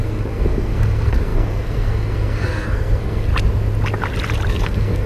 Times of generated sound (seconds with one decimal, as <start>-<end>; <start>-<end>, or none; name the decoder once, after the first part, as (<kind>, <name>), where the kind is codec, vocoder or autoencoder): 0.0-3.3 (codec, SNAC); 4.5-5.1

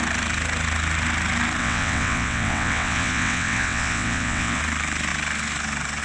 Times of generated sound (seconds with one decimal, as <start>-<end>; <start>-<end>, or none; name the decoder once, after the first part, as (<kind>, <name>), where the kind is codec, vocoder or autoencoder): 1.6-4.6 (vocoder, WaveNeXt)

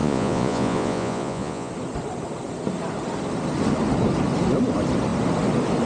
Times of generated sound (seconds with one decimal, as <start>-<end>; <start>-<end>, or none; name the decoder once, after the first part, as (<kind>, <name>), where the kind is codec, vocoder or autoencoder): 0.0-1.7 (vocoder, Vocos)

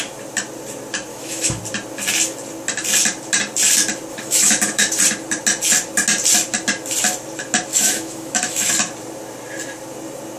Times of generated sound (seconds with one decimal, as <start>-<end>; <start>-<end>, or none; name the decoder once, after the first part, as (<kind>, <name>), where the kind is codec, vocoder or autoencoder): 1.1-1.6 (autoencoder, DAC-VAE); 4.1-5.0; 7.7-8.7

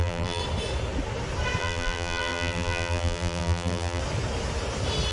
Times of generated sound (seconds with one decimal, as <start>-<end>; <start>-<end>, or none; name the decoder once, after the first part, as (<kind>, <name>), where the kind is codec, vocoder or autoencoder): 0.0-0.4 (vocoder, BigVGAN v2); 1.6-4.0

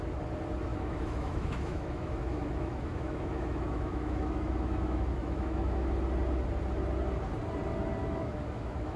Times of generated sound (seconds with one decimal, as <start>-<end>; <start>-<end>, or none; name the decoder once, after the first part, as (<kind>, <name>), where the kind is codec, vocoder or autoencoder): 0.7-5.9 (autoencoder, DAC-VAE); 8.0-9.0

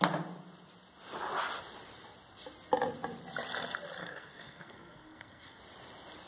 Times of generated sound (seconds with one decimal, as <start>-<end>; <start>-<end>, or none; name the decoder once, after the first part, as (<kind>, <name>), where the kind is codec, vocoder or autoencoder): 4.0-5.6 (codec, SNAC)

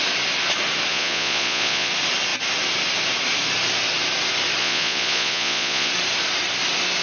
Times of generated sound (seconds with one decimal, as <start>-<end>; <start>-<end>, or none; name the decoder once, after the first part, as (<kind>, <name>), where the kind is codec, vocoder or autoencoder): 0.9-1.9 (vocoder, Vocos); 4.6-5.9